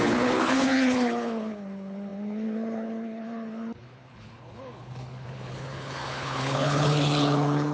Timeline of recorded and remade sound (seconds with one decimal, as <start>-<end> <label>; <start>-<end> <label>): 0.0-7.7 remade